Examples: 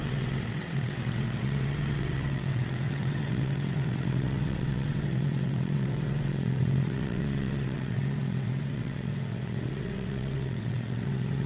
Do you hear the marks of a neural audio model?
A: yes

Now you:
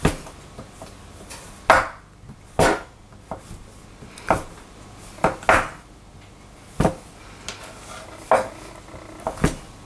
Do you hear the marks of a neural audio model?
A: no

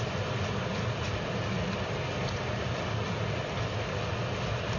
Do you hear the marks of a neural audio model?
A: no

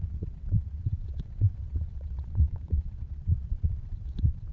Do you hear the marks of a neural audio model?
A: yes